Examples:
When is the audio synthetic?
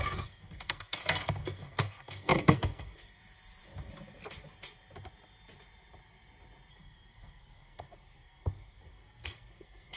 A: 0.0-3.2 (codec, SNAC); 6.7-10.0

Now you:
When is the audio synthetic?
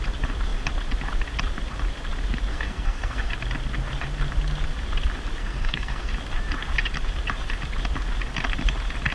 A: 2.5-3.3 (codec, SNAC); 5.4-6.1